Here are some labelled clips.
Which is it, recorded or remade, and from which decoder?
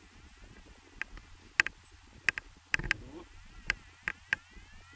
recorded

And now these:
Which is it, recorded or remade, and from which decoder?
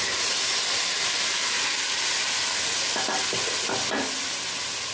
recorded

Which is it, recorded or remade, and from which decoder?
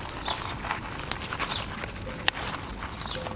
recorded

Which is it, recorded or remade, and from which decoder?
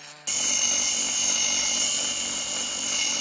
recorded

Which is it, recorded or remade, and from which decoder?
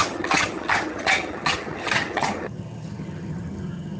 remade, vocoder, HiFi-GAN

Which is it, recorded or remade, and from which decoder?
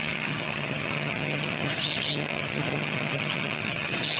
remade, vocoder, HiFi-GAN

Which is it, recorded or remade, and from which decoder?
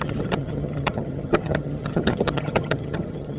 remade, vocoder, HiFi-GAN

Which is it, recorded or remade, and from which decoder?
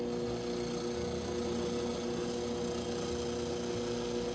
recorded